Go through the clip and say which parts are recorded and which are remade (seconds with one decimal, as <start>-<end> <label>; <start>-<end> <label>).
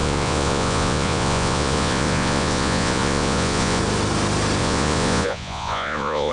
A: 0.0-3.8 remade; 3.8-4.6 recorded; 4.6-6.3 remade